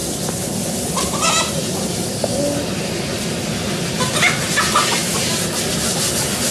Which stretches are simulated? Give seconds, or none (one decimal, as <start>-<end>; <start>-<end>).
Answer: none